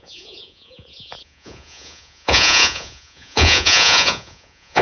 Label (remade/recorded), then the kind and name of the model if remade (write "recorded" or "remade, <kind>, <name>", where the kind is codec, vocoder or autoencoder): remade, vocoder, Vocos